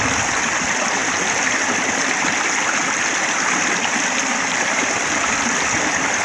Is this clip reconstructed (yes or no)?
no